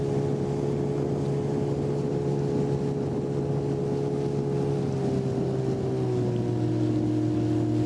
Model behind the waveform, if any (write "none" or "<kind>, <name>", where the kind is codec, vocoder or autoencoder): none